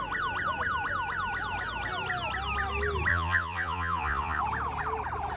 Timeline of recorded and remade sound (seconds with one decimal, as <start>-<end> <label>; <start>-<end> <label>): 0.0-3.1 recorded; 3.1-4.4 remade; 4.4-5.4 recorded